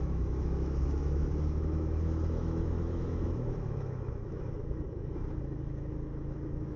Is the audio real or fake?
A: fake